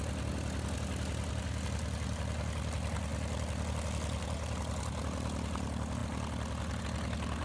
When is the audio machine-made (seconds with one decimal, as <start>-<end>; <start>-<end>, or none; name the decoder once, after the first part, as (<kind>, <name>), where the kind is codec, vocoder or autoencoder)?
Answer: none